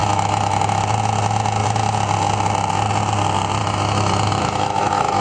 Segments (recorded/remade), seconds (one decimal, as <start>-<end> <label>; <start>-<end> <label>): 0.0-0.8 remade; 0.8-3.6 recorded; 3.6-5.2 remade